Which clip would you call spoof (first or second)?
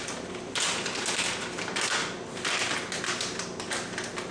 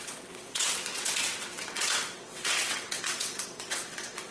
second